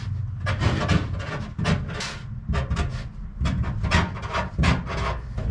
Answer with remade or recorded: recorded